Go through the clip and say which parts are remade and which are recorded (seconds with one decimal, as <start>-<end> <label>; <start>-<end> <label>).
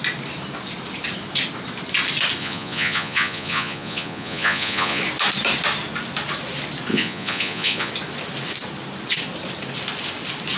0.0-2.4 recorded; 2.4-5.0 remade; 5.0-6.9 recorded; 6.9-7.9 remade; 7.9-10.6 recorded